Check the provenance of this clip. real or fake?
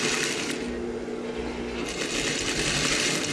real